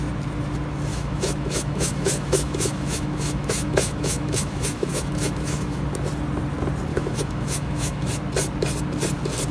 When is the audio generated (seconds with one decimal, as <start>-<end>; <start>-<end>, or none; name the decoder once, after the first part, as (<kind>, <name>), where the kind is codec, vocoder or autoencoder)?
0.9-5.8 (autoencoder, DAC-VAE); 6.9-8.1